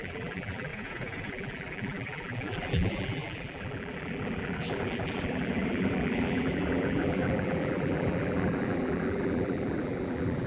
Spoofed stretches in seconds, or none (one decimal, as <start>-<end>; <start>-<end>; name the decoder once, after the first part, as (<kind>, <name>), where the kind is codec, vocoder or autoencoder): 0.0-0.7 (vocoder, BigVGAN v2); 1.3-10.5